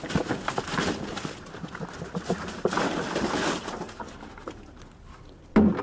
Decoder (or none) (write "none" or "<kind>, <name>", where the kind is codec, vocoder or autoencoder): none